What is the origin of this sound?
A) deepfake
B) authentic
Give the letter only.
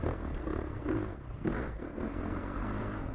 A